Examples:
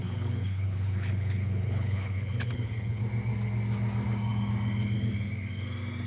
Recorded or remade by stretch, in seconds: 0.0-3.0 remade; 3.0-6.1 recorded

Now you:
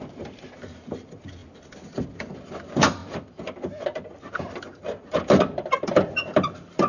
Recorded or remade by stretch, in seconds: 0.0-6.9 remade

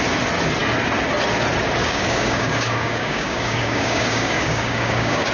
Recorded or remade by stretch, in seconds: 0.0-1.8 recorded; 1.8-5.3 remade

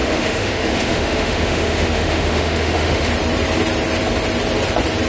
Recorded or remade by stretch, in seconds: 0.0-3.1 remade; 3.1-5.1 recorded

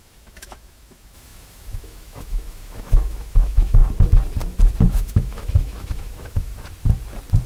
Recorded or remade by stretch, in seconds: 0.0-3.8 remade; 3.8-4.9 recorded; 4.9-6.5 remade; 6.5-7.5 recorded

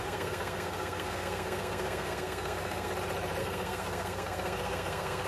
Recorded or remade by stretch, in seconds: 0.0-2.9 remade; 2.9-3.4 recorded; 3.4-5.3 remade

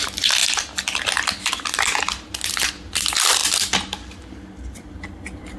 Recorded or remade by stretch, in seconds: 0.0-5.6 recorded